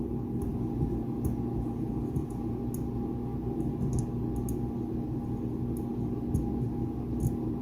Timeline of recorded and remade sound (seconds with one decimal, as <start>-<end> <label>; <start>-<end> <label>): 0.0-0.5 recorded; 0.5-2.6 remade; 2.6-7.6 recorded

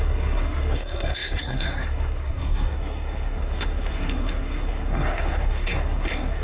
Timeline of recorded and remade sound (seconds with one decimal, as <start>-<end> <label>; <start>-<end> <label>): 0.0-6.4 remade

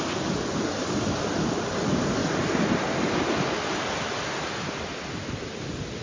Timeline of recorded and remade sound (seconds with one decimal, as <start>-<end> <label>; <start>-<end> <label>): 0.0-6.0 recorded